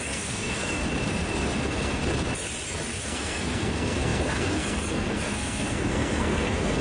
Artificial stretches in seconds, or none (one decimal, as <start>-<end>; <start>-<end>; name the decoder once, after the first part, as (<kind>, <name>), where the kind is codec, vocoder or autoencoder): 0.0-0.8 (codec, SNAC); 1.6-2.0; 3.0-6.8